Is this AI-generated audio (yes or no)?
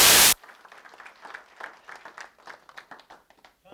no